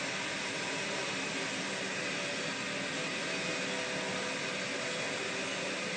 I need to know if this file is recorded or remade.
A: recorded